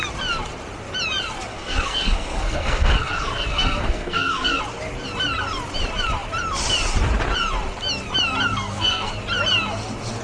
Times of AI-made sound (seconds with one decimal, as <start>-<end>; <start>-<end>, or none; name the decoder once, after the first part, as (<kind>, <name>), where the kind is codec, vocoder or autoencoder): 1.5-4.6 (codec, SNAC); 8.5-9.1